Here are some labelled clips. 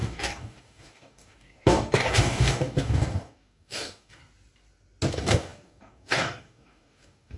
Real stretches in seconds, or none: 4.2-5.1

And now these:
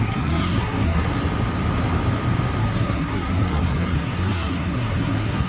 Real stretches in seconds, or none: 1.1-2.6

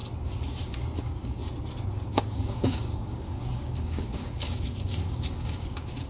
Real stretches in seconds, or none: 0.0-1.0; 1.4-2.1